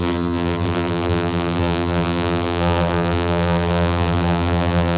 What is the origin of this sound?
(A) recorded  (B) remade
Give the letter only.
B